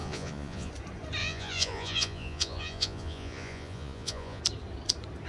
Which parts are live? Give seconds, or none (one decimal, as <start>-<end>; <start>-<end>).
0.7-1.2; 4.4-5.3